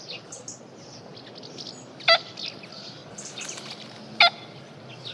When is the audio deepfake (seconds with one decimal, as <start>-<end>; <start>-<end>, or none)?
3.0-4.0